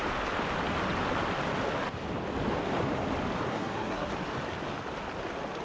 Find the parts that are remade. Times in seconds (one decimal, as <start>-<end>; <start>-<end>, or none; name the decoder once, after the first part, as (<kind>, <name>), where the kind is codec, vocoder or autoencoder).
3.5-4.1 (codec, SNAC)